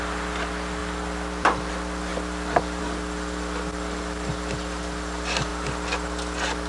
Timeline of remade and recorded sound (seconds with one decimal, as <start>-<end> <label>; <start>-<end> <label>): 0.0-0.8 recorded; 0.8-1.7 remade; 1.7-2.1 recorded; 2.1-2.8 remade; 2.8-6.7 recorded